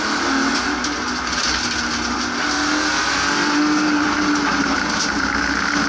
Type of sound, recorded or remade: recorded